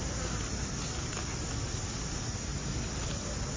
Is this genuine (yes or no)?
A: yes